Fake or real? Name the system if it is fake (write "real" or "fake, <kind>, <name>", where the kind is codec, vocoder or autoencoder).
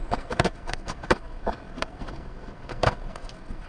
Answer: fake, codec, SNAC